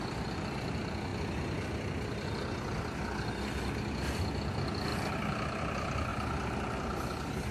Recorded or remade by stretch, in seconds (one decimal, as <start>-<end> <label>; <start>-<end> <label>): 0.0-7.5 recorded